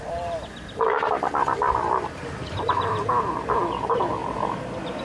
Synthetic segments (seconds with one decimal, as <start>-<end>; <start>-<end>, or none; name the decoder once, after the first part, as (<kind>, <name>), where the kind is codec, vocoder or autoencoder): none